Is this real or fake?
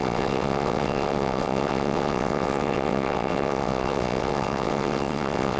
fake